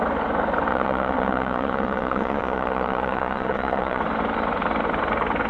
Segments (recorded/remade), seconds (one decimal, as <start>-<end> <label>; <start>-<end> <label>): 0.0-0.7 recorded; 0.7-4.0 remade; 4.0-5.5 recorded